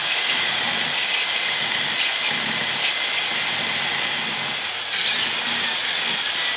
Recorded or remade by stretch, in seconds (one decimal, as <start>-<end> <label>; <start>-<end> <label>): 0.0-0.6 remade; 0.6-6.6 recorded